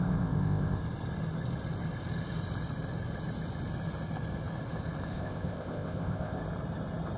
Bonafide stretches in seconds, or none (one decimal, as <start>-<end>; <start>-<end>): 0.8-5.1; 6.4-7.2